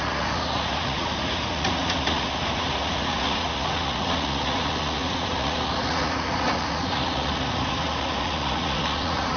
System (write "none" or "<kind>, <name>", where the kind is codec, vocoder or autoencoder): vocoder, Vocos